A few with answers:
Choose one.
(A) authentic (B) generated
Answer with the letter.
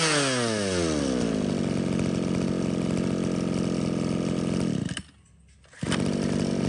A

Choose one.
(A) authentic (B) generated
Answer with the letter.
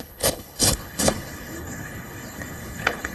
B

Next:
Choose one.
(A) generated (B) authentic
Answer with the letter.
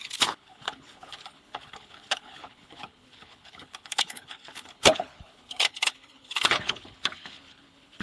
A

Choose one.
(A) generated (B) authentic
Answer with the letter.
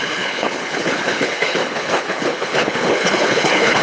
A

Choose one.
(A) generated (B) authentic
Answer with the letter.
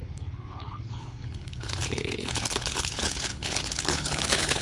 A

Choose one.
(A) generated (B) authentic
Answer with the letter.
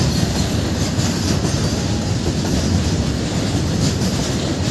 B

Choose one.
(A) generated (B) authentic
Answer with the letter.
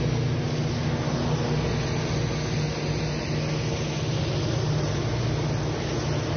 B